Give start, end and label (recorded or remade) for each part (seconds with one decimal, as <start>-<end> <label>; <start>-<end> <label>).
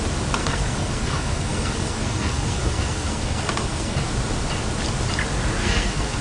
0.0-0.4 recorded; 0.4-4.1 remade; 4.1-5.6 recorded; 5.6-6.2 remade